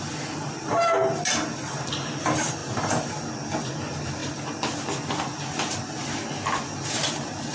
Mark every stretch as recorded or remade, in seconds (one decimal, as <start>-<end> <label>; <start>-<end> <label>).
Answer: 0.0-7.5 recorded